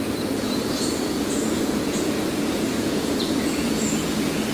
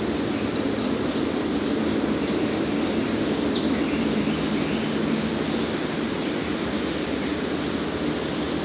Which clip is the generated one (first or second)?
first